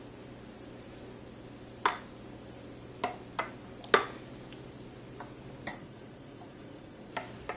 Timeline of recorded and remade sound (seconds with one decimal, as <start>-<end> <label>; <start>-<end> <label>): 0.0-5.7 recorded; 5.7-7.1 remade; 7.1-7.6 recorded